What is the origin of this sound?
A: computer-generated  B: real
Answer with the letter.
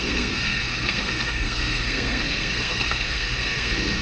A